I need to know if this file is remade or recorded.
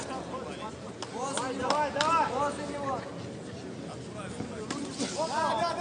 recorded